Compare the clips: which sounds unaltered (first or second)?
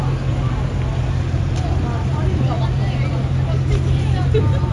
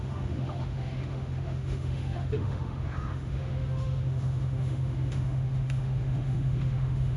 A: first